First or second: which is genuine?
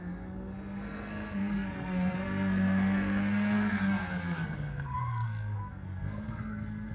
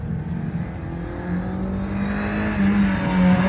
second